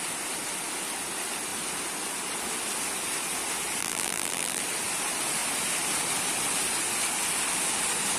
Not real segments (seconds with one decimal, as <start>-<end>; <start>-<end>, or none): 3.8-4.6